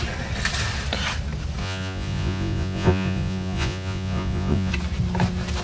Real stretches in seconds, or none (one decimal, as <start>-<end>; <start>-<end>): 0.0-1.6; 4.7-5.6